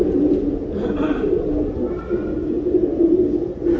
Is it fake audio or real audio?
real